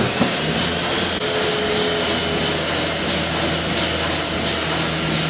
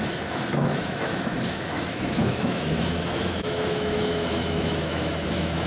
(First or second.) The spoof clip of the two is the second